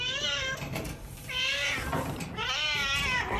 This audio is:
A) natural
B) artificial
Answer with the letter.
B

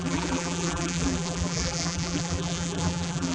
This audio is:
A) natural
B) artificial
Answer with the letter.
B